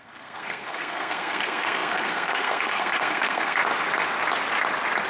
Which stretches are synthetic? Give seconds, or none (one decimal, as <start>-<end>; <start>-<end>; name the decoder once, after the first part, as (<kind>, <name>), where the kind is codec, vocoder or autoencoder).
0.0-3.6 (codec, SNAC)